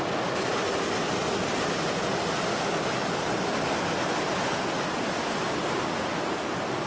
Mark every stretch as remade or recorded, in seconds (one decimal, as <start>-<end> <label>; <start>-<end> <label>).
0.0-6.9 recorded